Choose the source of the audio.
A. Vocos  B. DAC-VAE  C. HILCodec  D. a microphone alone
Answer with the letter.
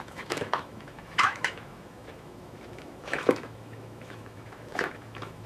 B